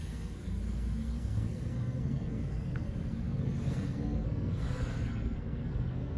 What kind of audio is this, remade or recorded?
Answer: remade